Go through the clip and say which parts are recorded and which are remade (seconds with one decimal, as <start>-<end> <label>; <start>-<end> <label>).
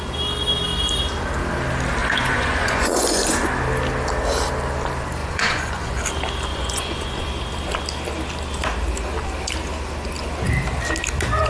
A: 0.0-2.0 recorded; 2.0-3.5 remade; 3.5-5.2 recorded; 5.2-6.0 remade; 6.0-6.5 recorded; 6.5-7.3 remade; 7.3-11.5 recorded